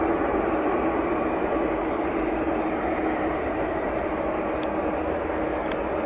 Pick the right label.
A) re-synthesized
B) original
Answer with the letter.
B